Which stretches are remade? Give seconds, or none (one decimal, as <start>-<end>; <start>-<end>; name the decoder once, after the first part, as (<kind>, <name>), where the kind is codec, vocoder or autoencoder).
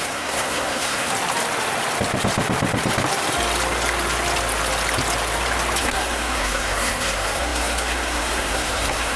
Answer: 0.0-1.1 (codec, SNAC); 5.8-9.2